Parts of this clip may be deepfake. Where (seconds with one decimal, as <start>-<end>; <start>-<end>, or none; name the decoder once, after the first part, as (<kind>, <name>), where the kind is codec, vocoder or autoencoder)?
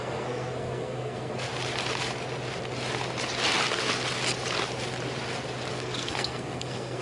0.0-1.5 (codec, SNAC); 5.7-7.0